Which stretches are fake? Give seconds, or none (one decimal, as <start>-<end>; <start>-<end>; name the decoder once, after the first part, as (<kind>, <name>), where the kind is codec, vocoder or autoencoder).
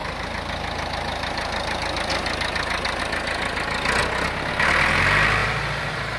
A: 0.0-3.0 (vocoder, BigVGAN v2); 5.4-6.2